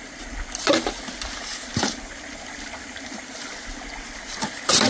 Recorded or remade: recorded